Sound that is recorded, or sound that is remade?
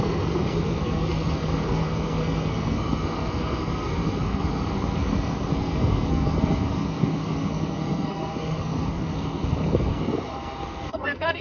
remade